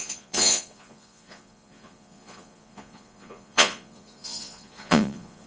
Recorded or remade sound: remade